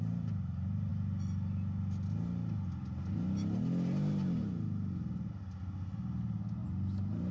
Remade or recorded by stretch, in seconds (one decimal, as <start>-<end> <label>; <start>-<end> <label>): 0.0-7.3 recorded